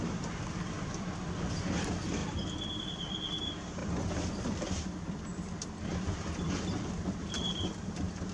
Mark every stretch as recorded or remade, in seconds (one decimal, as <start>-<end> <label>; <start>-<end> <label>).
0.0-3.8 remade; 3.8-4.3 recorded; 4.3-5.3 remade; 5.3-5.9 recorded; 5.9-8.3 remade